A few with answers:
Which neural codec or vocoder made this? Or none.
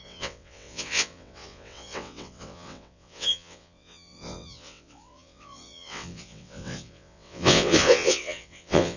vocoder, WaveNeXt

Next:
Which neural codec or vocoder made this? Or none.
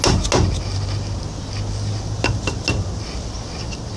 none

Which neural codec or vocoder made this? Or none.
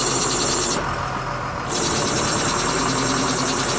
none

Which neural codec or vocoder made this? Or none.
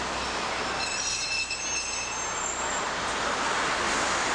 none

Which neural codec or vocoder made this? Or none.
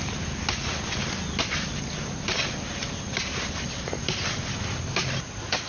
none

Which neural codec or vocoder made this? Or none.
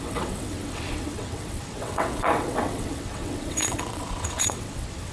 vocoder, WaveNeXt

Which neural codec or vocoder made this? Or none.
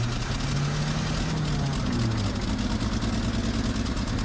none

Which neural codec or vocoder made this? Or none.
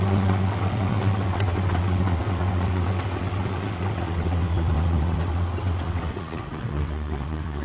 vocoder, WaveNeXt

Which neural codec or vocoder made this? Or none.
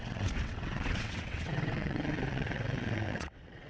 vocoder, WaveNeXt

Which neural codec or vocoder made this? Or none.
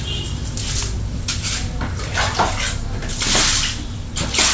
none